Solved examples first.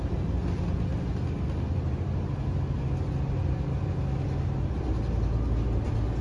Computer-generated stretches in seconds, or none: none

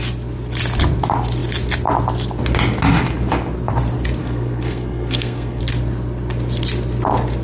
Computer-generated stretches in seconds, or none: 4.2-5.6